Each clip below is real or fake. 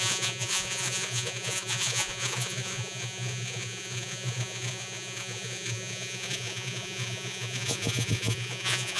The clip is fake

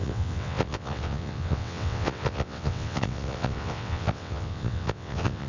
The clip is fake